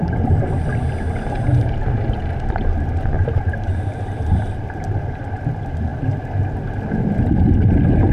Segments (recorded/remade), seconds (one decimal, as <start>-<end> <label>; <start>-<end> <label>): 0.0-8.1 recorded